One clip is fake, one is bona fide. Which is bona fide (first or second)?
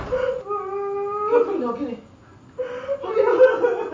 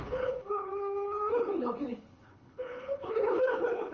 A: first